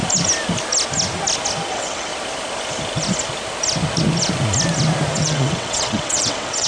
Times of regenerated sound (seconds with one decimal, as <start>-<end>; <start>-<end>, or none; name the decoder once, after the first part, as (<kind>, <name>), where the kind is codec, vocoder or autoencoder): 1.7-2.1 (vocoder, WaveNeXt); 5.1-6.7